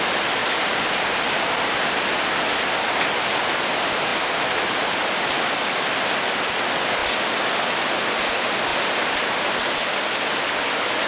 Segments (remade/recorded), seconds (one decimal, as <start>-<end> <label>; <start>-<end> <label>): 0.0-0.4 recorded; 0.4-2.1 remade; 2.1-8.7 recorded; 8.7-10.0 remade; 10.0-11.1 recorded